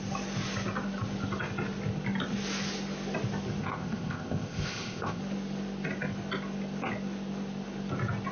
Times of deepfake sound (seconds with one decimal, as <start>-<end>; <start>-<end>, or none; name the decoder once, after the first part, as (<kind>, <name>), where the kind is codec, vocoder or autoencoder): 3.6-5.2 (codec, ZipCodec)